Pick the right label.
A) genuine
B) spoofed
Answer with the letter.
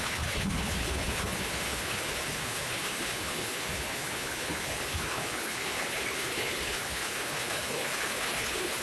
B